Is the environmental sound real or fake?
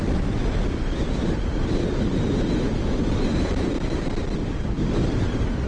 fake